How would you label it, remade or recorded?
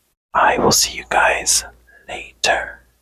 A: recorded